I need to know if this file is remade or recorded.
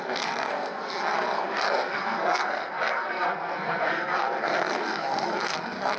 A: remade